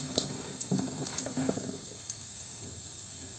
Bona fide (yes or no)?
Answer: no